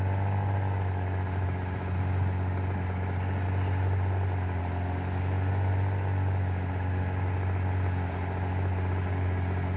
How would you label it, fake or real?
real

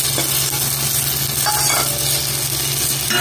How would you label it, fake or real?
real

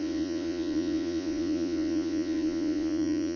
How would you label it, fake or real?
fake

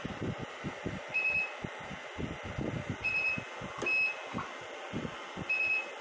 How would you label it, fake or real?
real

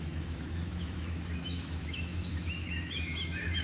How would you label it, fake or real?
fake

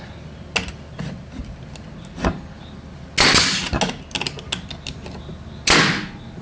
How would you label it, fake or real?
real